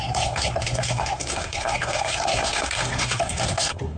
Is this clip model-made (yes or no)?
yes